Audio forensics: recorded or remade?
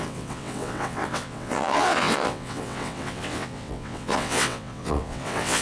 remade